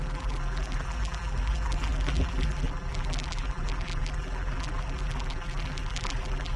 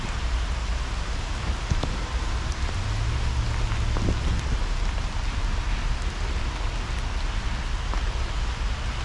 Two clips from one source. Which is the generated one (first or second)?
first